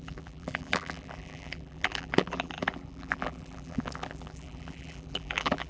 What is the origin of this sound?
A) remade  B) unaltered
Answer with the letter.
A